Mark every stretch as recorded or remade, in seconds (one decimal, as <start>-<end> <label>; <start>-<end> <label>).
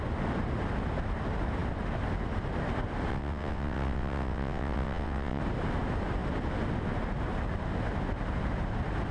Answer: 0.0-3.1 recorded; 3.1-5.4 remade; 5.4-9.1 recorded